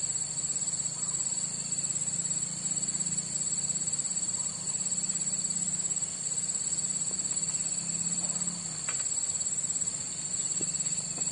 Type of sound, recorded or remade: recorded